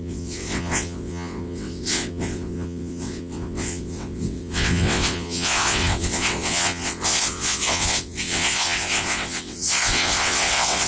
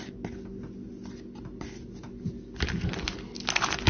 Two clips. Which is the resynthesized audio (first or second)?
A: first